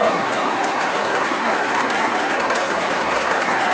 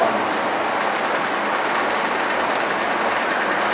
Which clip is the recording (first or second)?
second